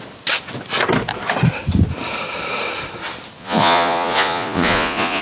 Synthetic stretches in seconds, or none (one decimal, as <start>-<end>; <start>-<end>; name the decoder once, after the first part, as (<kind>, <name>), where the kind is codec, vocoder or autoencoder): 3.4-5.2 (vocoder, Vocos)